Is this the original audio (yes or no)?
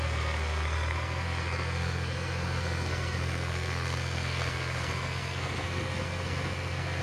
no